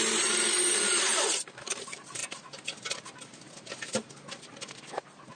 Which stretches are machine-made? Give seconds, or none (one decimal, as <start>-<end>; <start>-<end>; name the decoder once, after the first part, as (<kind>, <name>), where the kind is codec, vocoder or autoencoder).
0.0-2.2 (vocoder, BigVGAN v2)

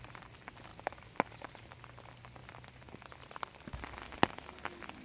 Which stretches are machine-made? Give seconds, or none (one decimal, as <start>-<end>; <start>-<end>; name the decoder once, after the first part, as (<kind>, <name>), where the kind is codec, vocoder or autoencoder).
none

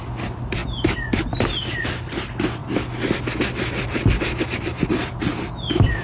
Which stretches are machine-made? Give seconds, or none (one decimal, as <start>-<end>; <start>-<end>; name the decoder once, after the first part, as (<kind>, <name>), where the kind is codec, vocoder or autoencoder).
none

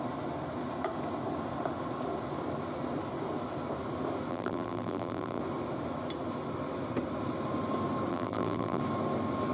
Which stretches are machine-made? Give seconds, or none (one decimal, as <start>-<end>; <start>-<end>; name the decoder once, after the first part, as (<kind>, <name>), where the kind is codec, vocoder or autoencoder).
4.3-5.4 (vocoder, BigVGAN v2); 8.1-8.8

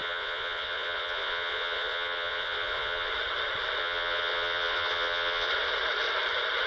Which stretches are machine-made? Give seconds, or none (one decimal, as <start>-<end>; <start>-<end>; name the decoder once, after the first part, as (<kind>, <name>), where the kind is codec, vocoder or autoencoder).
0.0-3.1 (vocoder, Vocos); 3.8-5.5

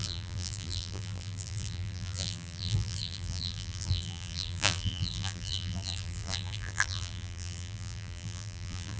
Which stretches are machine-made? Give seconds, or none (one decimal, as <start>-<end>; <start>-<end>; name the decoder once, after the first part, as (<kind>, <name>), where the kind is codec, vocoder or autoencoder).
0.0-9.0 (vocoder, BigVGAN v2)